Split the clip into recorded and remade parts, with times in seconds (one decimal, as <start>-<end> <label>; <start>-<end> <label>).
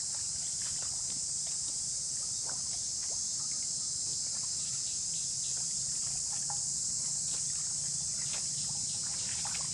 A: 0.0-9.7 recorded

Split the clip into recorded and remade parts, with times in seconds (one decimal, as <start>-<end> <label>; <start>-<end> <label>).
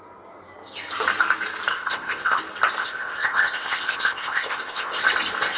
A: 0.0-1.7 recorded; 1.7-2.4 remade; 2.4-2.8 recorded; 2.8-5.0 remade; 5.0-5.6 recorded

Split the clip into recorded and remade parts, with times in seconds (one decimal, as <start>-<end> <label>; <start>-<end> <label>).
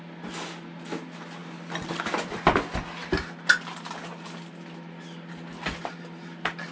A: 0.0-6.7 recorded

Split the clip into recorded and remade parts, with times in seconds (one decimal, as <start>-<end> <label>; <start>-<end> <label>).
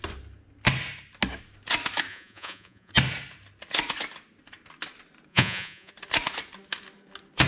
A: 0.0-2.1 recorded; 2.1-2.9 remade; 2.9-5.3 recorded; 5.3-5.9 remade; 5.9-7.5 recorded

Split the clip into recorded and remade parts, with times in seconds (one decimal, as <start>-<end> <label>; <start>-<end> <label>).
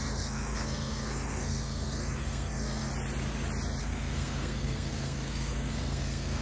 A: 0.0-2.9 remade; 2.9-3.8 recorded; 3.8-6.4 remade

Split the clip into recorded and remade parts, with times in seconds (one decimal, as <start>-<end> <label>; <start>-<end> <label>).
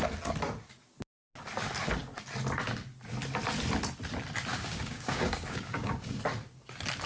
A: 0.0-4.5 recorded; 4.5-6.2 remade; 6.2-7.1 recorded